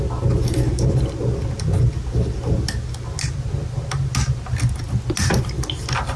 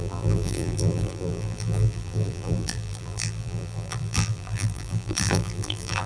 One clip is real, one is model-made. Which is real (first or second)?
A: first